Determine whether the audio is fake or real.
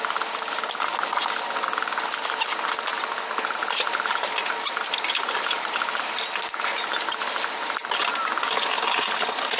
real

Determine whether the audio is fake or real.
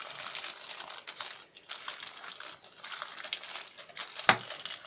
real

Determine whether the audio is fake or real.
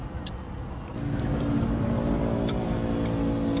real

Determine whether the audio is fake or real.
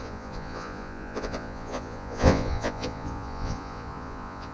fake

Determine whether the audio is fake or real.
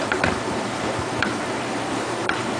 fake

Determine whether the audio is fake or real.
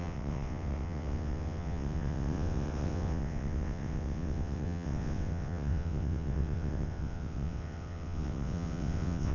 fake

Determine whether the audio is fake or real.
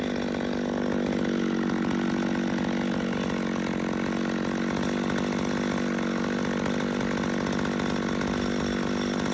real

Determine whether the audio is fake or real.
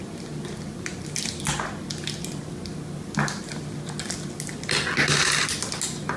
real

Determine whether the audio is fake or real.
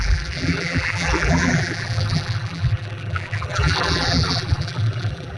fake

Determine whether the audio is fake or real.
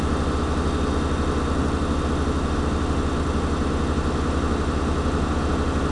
real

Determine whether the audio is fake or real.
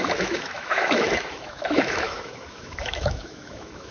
fake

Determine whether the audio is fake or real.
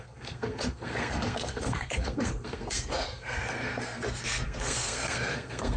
fake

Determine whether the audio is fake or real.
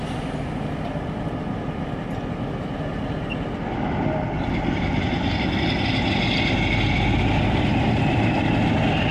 real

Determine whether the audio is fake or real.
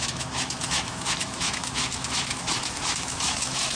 fake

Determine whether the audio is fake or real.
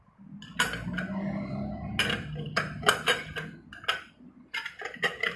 real